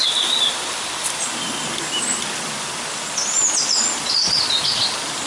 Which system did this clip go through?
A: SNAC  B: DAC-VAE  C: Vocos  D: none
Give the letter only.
D